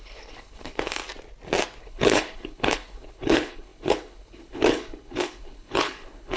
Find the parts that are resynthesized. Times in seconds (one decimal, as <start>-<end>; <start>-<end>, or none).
0.0-1.0; 1.8-6.4